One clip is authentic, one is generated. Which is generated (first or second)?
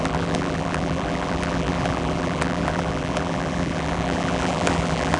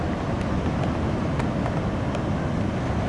first